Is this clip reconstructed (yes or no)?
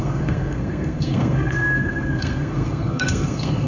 yes